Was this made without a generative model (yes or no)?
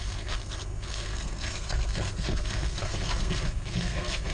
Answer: no